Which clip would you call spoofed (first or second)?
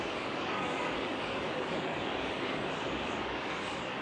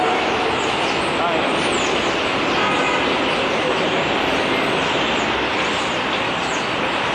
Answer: first